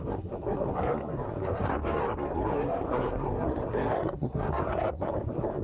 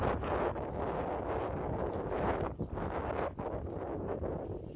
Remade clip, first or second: first